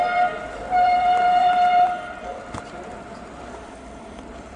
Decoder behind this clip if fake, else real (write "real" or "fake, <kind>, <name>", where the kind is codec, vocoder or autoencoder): fake, vocoder, BigVGAN v2